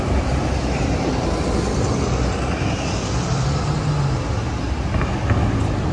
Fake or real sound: real